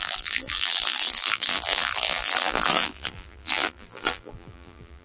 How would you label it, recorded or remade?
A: remade